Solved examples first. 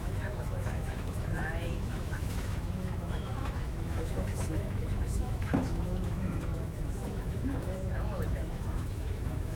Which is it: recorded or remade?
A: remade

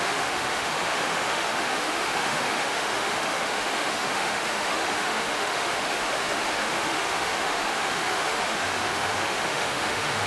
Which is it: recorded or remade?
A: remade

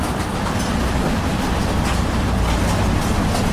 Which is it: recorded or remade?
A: recorded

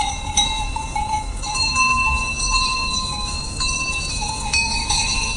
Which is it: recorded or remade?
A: remade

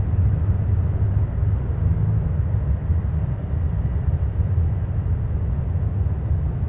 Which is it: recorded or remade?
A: recorded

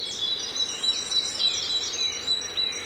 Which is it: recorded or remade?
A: recorded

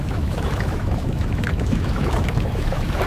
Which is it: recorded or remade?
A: remade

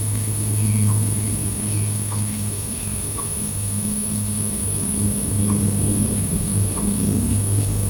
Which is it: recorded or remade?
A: remade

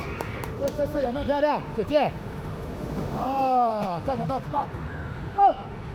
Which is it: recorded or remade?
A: remade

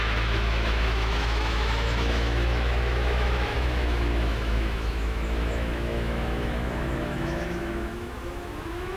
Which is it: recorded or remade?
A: remade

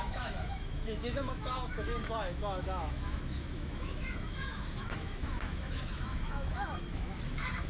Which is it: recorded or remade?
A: remade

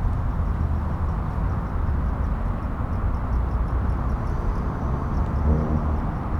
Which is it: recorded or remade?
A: recorded